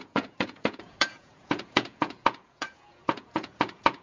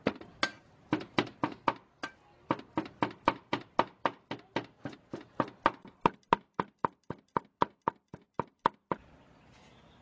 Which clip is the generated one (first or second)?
first